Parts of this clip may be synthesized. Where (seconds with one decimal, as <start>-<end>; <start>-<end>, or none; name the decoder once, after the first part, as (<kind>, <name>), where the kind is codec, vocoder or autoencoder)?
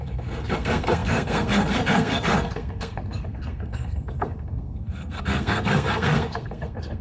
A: 0.0-7.0 (codec, SNAC)